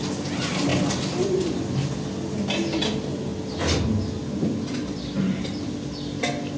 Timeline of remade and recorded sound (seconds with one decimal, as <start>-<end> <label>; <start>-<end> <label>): 0.0-0.7 recorded; 0.7-2.0 remade; 2.0-6.6 recorded